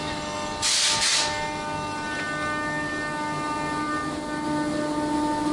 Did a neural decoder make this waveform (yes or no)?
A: no